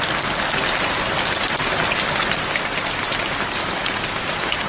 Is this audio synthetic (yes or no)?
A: no